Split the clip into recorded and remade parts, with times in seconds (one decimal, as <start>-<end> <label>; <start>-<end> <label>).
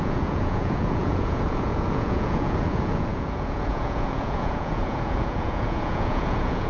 0.0-6.7 remade